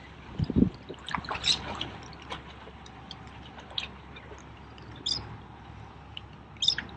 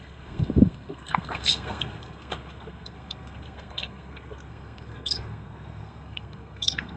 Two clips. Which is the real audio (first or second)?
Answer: first